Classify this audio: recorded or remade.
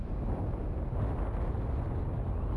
recorded